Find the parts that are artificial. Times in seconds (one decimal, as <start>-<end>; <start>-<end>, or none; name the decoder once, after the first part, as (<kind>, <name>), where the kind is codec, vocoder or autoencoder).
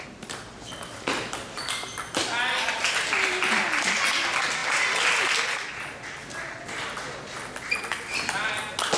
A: none